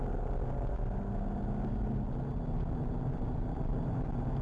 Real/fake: real